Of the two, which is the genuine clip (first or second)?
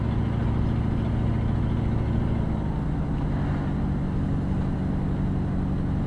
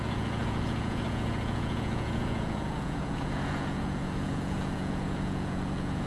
first